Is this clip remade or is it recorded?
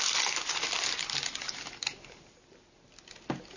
recorded